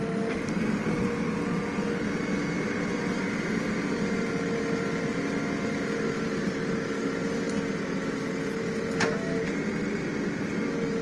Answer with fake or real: real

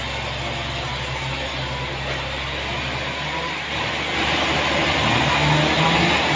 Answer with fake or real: real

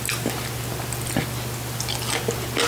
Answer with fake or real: real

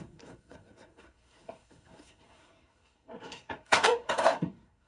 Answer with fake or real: fake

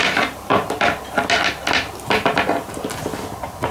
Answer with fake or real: real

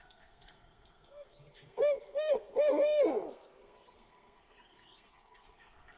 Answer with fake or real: fake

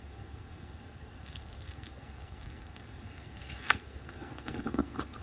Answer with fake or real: fake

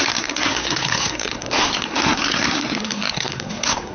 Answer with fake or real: fake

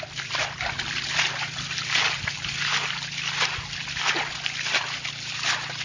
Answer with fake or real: real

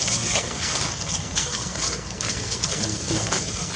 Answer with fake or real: fake